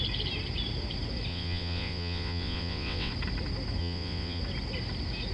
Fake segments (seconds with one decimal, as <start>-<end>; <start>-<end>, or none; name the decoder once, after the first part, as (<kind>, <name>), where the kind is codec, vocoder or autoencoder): 1.3-3.1 (vocoder, WaveNeXt); 3.8-4.4